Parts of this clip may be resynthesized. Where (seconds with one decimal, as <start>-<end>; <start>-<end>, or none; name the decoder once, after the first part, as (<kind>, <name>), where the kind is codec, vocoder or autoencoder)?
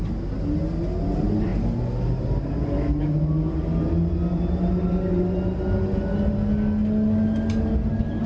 none